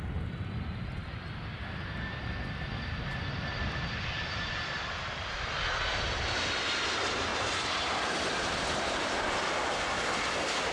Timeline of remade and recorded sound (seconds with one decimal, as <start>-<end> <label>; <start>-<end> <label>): 0.0-7.3 recorded; 7.3-9.3 remade; 9.3-10.7 recorded